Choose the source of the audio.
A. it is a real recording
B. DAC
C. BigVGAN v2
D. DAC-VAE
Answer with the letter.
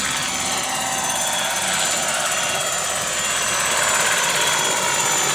A